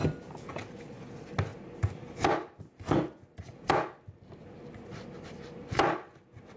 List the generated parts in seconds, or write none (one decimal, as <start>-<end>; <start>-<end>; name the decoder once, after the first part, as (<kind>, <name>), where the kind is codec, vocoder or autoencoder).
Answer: none